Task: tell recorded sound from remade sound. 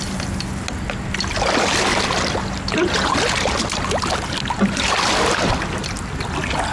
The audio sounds recorded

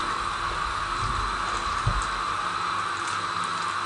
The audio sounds recorded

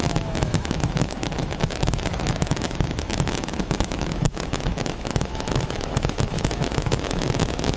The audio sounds remade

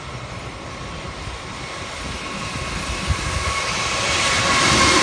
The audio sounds recorded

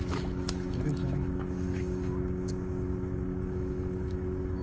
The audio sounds remade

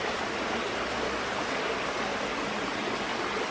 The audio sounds recorded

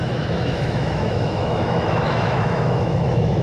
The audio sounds remade